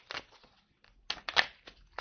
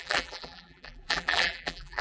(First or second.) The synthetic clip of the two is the second